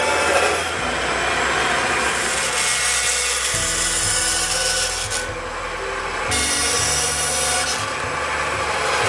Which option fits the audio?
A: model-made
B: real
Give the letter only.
B